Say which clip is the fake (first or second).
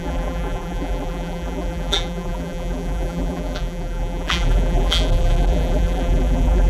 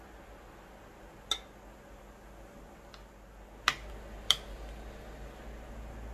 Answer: first